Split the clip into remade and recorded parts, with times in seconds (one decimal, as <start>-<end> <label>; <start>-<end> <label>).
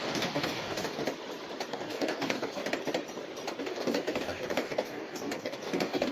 0.0-1.0 remade; 1.0-1.7 recorded; 1.7-2.6 remade; 2.6-3.6 recorded; 3.6-6.1 remade